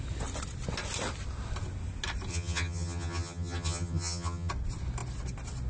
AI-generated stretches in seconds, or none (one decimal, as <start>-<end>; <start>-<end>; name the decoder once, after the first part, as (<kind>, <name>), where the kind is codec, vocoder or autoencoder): 2.3-4.5 (vocoder, HiFi-GAN)